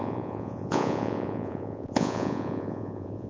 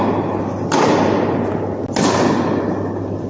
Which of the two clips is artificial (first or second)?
first